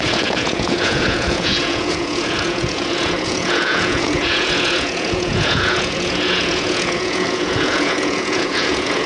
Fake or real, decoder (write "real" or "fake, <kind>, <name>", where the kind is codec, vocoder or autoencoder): fake, vocoder, Vocos